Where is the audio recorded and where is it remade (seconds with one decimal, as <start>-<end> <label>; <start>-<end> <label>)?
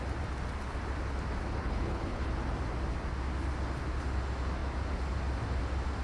0.0-1.6 recorded; 1.6-2.3 remade; 2.3-6.0 recorded